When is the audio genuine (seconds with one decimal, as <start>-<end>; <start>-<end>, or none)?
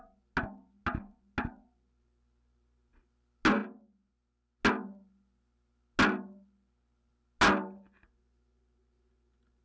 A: 0.0-9.6